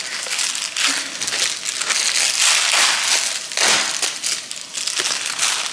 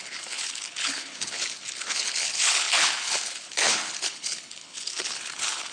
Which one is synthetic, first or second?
second